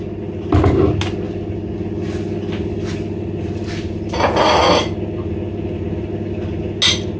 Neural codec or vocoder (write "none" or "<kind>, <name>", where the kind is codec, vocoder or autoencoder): none